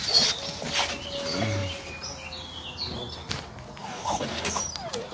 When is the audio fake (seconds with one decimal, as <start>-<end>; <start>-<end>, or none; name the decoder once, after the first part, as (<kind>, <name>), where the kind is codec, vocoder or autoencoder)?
3.8-4.6 (codec, DAC)